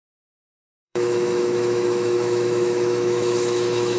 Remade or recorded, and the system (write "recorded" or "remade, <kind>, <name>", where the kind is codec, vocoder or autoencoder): remade, autoencoder, DAC-VAE